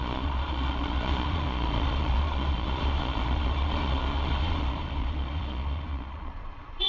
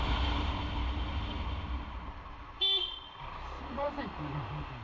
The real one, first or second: second